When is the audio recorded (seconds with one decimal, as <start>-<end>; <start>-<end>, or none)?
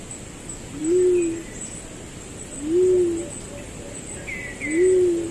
0.0-5.3